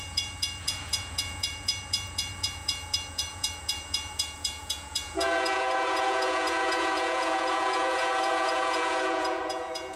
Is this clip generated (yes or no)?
yes